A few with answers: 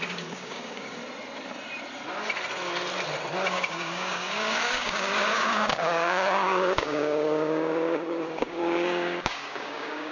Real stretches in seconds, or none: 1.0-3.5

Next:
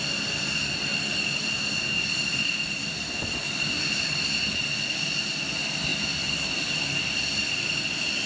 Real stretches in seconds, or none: 0.0-8.3

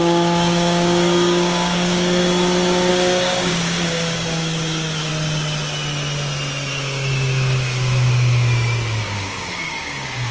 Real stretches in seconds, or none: 2.2-2.9; 5.1-6.7

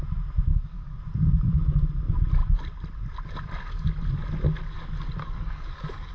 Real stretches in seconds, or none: 0.0-0.5; 1.0-5.2

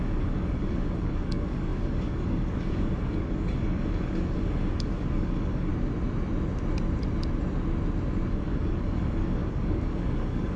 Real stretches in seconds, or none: 5.7-8.3

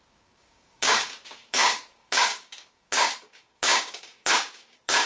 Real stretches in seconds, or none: none

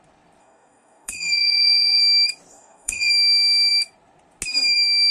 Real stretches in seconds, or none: 0.0-0.4; 2.0-2.5; 3.1-5.1

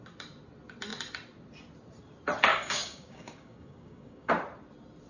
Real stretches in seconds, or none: 0.0-2.5; 4.3-5.1